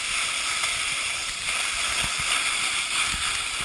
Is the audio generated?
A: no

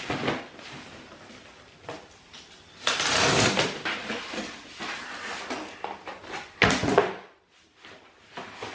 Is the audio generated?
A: no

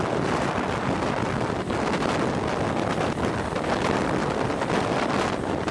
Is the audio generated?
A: no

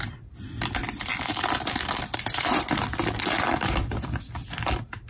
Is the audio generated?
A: no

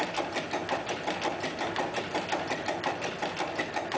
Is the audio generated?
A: no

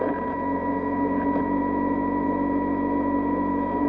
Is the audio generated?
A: yes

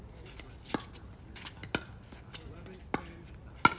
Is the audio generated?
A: no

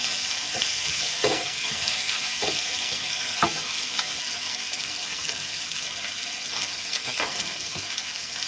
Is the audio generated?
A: yes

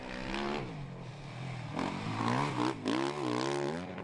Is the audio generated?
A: no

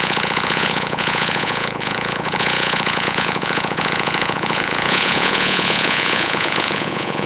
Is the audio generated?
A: yes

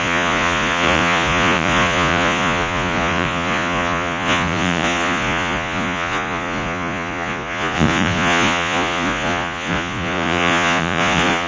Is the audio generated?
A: yes